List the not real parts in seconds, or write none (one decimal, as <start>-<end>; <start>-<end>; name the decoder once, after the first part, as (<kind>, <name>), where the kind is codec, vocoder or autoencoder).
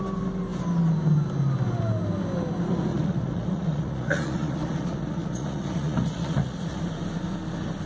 2.9-6.8 (vocoder, Vocos)